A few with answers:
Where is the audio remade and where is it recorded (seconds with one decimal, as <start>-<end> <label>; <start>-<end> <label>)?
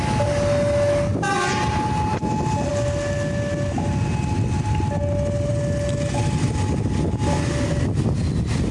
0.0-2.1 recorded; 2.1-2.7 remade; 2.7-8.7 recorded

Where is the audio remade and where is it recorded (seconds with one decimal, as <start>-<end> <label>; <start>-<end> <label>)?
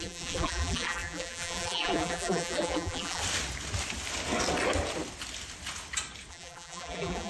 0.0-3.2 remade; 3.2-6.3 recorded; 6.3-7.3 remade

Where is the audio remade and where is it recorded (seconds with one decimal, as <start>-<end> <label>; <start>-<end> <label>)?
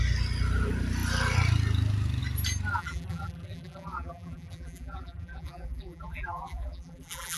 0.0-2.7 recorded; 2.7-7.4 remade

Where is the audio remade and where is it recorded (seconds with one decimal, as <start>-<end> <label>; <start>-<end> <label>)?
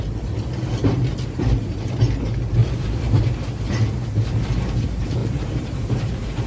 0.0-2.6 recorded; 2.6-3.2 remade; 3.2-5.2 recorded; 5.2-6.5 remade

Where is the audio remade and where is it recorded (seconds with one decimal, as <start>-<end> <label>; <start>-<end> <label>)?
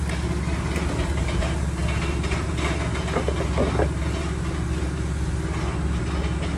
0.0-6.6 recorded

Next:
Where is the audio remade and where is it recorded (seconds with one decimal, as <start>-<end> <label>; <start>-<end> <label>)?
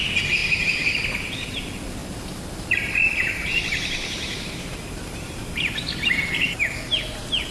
0.0-0.4 recorded; 0.4-1.5 remade; 1.5-2.0 recorded; 2.0-6.5 remade; 6.5-7.5 recorded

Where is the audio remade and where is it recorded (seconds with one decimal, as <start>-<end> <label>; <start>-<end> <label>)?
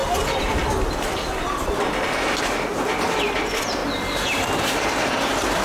0.0-3.4 recorded; 3.4-3.8 remade; 3.8-5.6 recorded